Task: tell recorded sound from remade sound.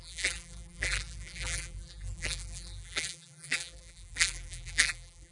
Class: remade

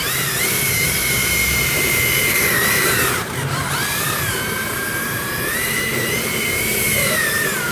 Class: remade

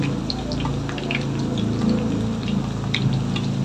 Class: recorded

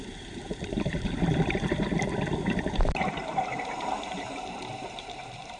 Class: remade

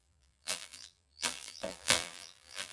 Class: remade